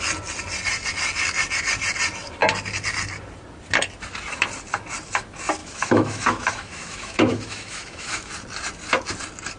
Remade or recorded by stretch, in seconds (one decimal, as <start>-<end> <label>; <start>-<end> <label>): 0.0-5.6 recorded; 5.6-8.3 remade; 8.3-9.6 recorded